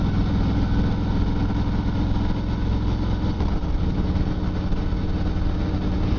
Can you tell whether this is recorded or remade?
recorded